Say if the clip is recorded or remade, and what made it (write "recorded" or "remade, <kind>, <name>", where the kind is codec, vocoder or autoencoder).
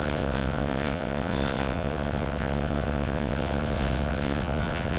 remade, vocoder, WaveNeXt